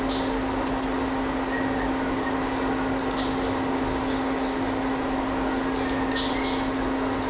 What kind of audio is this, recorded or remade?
recorded